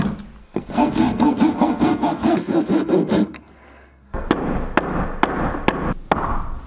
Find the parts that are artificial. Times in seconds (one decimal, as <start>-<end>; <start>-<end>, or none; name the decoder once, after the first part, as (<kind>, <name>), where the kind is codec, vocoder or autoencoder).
0.4-4.3 (codec, SNAC)

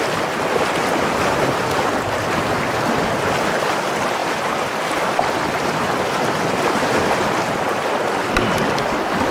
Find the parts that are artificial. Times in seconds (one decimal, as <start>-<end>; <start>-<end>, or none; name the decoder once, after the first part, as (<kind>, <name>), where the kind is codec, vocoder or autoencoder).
none

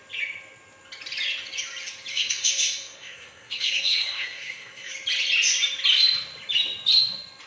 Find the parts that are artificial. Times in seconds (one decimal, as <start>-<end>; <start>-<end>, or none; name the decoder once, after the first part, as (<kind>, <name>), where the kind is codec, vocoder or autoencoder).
2.1-4.9 (codec, SNAC)

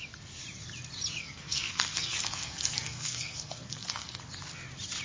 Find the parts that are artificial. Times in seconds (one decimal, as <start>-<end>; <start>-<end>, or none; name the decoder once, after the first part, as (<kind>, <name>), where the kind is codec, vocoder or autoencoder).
1.2-4.2 (codec, SNAC)

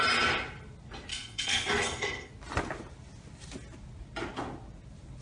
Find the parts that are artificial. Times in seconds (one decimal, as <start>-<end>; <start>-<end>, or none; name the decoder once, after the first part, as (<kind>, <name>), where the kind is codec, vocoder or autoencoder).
1.1-2.3 (codec, SNAC)

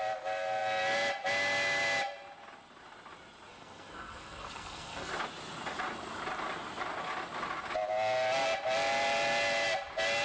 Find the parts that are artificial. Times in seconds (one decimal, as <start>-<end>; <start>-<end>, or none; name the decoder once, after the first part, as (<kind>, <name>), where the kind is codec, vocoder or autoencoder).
3.5-5.1 (codec, SNAC)